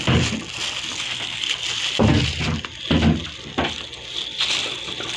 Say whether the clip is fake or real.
real